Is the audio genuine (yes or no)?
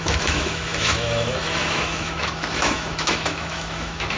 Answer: no